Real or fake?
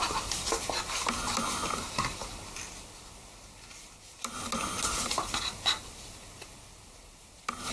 real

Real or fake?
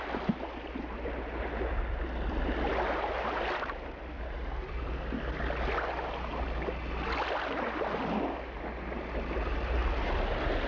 real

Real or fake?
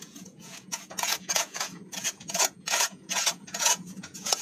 fake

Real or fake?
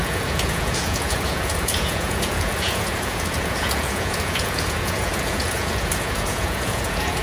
fake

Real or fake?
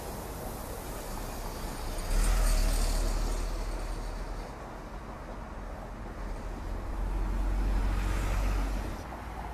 real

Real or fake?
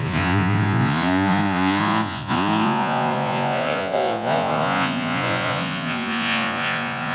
fake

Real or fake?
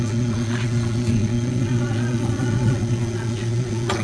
fake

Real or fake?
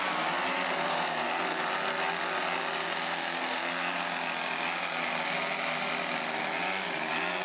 real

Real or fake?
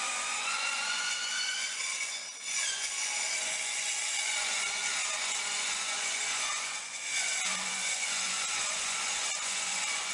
fake